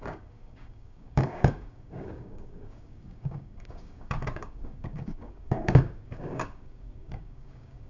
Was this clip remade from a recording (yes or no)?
yes